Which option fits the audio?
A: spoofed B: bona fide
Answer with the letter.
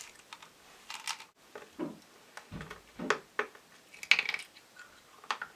B